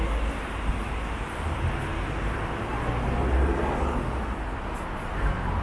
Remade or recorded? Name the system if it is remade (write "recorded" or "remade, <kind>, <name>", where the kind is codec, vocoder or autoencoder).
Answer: recorded